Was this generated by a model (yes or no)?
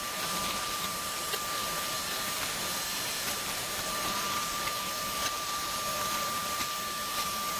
yes